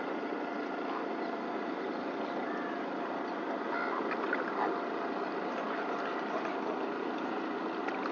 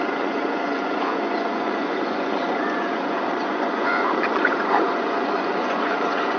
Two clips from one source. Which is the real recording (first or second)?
first